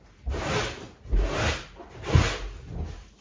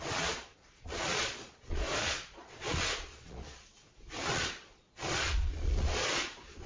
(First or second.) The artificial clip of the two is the second